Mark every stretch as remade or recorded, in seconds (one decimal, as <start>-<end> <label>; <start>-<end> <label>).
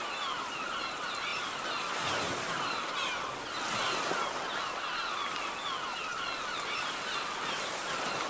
0.0-8.3 recorded